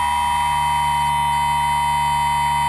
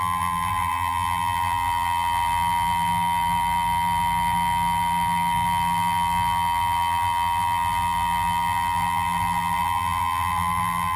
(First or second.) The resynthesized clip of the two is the second